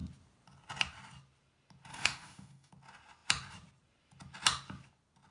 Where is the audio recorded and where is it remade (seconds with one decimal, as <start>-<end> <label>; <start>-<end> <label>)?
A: 0.0-1.9 recorded; 1.9-2.7 remade; 2.7-5.3 recorded